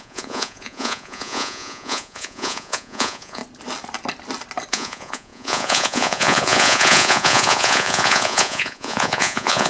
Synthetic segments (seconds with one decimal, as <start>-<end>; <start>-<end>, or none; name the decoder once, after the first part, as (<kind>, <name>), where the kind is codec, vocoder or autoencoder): 0.0-3.4 (vocoder, Vocos); 4.7-9.7